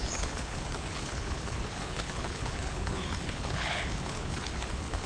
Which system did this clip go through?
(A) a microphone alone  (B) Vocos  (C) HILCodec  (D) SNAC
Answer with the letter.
C